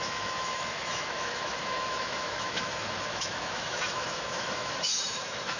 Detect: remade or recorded remade